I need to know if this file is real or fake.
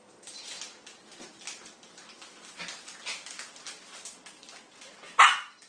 real